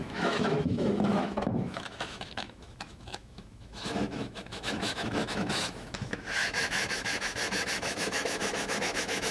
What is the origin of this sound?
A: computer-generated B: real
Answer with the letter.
A